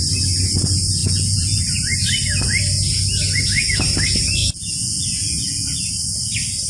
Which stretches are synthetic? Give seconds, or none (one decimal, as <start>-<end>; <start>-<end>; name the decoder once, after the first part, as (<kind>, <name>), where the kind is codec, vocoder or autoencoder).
1.0-1.6 (vocoder, Vocos); 4.4-5.9